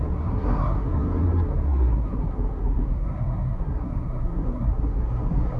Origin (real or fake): fake